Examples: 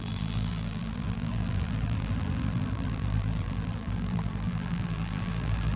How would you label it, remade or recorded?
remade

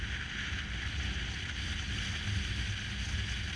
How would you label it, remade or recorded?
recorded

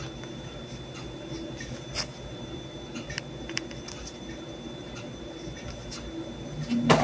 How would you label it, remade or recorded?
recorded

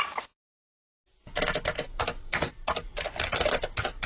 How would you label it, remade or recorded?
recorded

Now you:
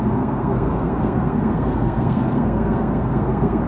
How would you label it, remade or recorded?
remade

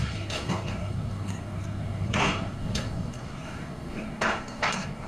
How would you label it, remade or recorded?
remade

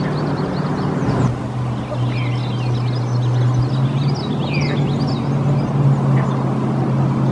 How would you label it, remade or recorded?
recorded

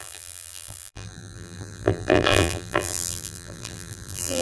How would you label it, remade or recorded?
remade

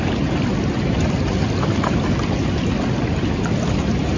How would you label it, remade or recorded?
recorded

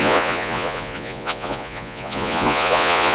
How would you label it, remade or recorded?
remade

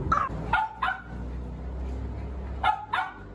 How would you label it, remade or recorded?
recorded